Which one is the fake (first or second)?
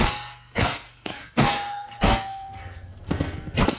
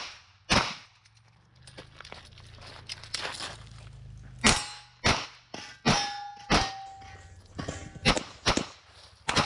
first